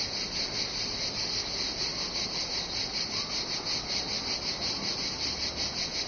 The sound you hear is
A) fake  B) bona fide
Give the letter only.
B